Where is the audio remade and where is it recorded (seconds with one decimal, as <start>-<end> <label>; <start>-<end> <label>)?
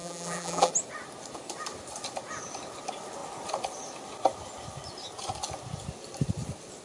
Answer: 0.0-0.7 remade; 0.7-6.8 recorded